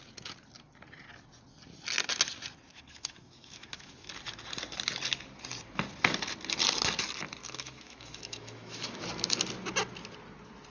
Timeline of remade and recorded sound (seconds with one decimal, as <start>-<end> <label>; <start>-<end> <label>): 0.0-2.7 recorded; 2.7-4.1 remade; 4.1-7.4 recorded; 7.4-9.0 remade; 9.0-10.7 recorded